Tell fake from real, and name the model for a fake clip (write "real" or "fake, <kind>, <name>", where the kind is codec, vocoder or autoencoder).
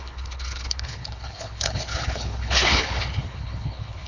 fake, codec, HILCodec